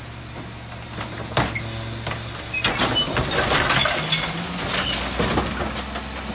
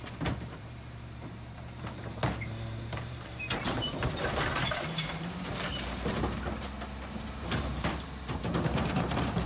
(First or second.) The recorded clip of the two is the first